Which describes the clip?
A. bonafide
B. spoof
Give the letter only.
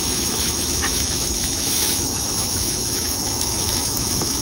B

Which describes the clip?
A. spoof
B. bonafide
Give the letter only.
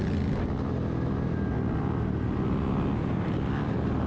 B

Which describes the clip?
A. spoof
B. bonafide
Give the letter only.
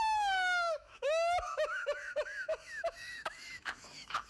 A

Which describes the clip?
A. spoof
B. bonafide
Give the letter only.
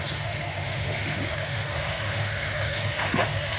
A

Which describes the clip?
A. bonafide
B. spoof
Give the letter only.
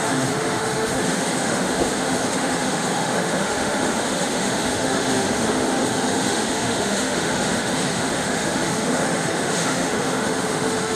B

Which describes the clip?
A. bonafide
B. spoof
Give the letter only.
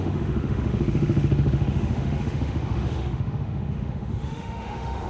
B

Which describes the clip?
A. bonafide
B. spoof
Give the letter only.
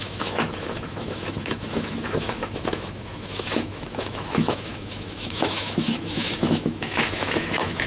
B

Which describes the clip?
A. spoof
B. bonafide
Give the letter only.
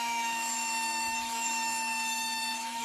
A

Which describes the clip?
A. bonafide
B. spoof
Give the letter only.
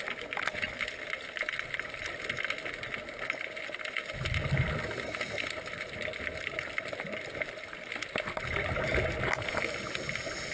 A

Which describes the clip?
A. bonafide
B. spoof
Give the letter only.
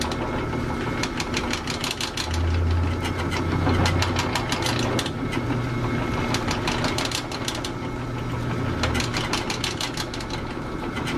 A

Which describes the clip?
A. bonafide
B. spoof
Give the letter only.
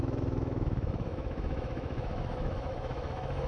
B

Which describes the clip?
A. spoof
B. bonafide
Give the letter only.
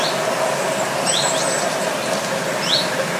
B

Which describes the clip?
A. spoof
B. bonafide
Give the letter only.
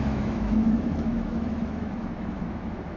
A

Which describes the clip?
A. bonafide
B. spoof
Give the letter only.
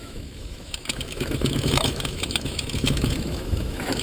B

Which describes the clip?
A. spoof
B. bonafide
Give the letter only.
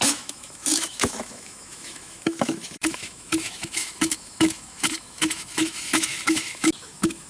A